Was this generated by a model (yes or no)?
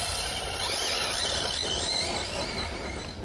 no